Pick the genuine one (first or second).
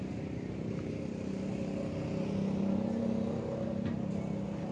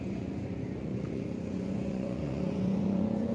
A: first